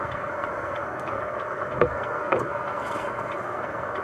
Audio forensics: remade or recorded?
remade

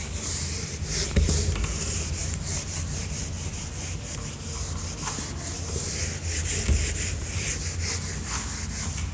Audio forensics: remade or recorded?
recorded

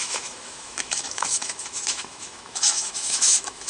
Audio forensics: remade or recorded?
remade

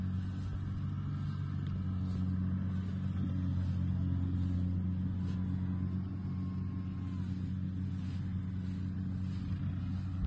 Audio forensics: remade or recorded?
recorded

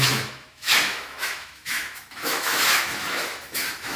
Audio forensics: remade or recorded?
remade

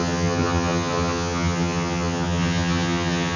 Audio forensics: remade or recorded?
remade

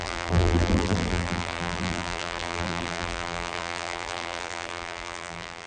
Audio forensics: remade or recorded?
remade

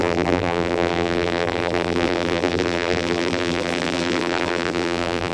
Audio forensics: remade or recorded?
remade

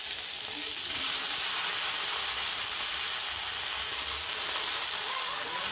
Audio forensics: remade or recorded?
recorded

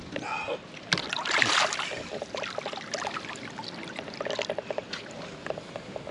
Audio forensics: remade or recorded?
recorded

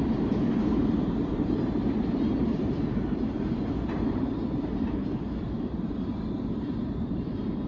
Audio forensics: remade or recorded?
remade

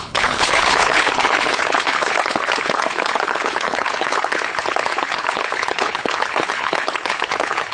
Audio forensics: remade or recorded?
remade